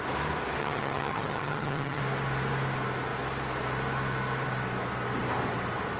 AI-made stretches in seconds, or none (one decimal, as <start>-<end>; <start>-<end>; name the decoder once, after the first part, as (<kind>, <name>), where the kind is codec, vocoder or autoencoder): 0.6-2.0 (vocoder, HiFi-GAN)